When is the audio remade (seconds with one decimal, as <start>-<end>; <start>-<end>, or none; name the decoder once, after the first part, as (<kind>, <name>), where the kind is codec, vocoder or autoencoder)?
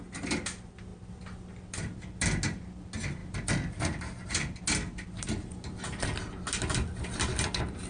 none